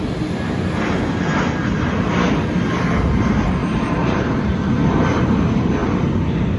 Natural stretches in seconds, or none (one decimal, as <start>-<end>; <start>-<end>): 0.0-3.6; 4.7-5.8